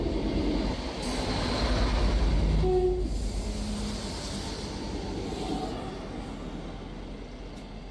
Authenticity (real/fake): real